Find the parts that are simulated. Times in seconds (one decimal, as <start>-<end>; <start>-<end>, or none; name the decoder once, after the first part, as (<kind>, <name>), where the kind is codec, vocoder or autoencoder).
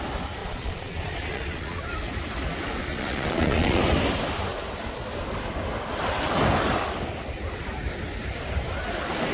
0.4-1.8 (vocoder, Vocos); 2.9-3.8